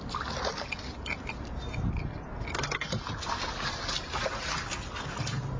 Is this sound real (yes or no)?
yes